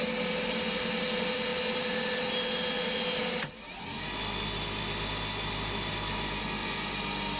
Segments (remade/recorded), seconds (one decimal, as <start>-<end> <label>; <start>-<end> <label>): 0.0-7.4 recorded